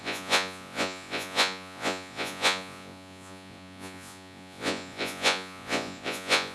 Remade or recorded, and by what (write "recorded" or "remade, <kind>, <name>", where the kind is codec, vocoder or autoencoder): remade, vocoder, Vocos